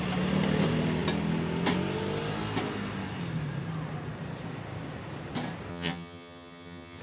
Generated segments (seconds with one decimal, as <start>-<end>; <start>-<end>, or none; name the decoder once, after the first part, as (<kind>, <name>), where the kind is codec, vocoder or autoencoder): 5.7-7.0 (vocoder, HiFi-GAN)